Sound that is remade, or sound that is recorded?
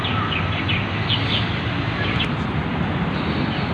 recorded